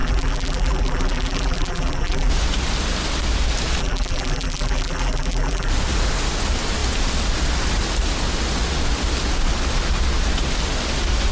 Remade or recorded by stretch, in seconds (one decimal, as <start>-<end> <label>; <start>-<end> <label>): 0.0-2.3 remade; 2.3-3.8 recorded; 3.8-5.7 remade; 5.7-11.3 recorded